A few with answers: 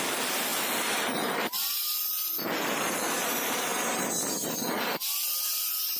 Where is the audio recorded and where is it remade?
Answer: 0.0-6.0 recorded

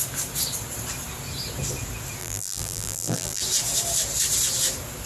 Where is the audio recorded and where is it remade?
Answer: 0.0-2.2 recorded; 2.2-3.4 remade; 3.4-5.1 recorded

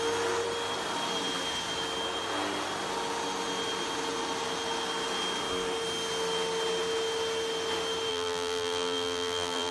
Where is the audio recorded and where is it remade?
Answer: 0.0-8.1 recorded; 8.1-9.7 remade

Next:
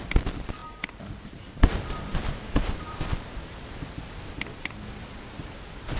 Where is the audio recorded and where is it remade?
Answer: 0.0-0.6 recorded; 0.6-4.2 remade; 4.2-6.0 recorded

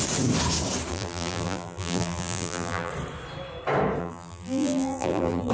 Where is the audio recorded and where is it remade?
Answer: 0.0-0.9 recorded; 0.9-2.9 remade; 2.9-4.0 recorded; 4.0-5.5 remade

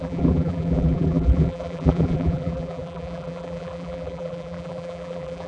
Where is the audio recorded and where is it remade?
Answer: 0.0-5.5 remade

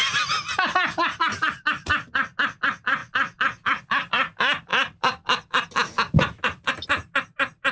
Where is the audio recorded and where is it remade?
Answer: 0.0-3.0 recorded; 3.0-4.1 remade; 4.1-4.7 recorded; 4.7-6.7 remade; 6.7-7.7 recorded

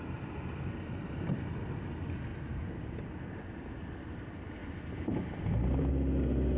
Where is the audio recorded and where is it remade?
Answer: 0.0-2.3 recorded; 2.3-3.1 remade; 3.1-4.6 recorded; 4.6-5.9 remade; 5.9-6.6 recorded